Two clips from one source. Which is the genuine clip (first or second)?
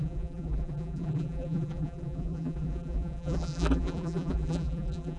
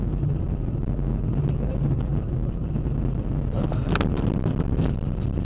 second